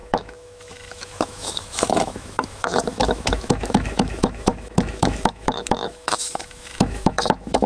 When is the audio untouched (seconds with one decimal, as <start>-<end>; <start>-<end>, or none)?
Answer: none